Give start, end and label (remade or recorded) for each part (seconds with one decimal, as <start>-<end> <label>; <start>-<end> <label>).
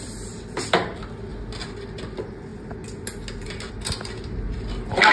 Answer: 0.0-5.1 recorded